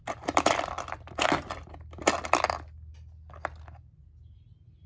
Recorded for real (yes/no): yes